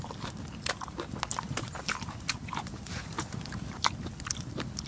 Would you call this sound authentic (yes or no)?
yes